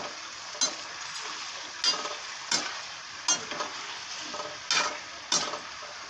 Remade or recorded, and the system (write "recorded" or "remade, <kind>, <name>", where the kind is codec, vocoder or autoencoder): recorded